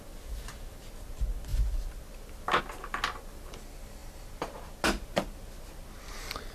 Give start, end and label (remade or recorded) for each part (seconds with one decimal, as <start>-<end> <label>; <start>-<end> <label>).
0.0-6.5 recorded